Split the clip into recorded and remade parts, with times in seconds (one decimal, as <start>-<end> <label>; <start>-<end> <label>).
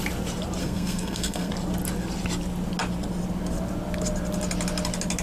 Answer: 0.0-0.6 recorded; 0.6-1.5 remade; 1.5-5.2 recorded